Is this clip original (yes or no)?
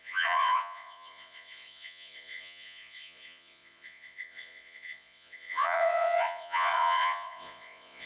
no